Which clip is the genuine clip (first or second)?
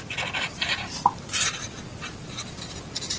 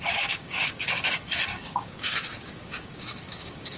first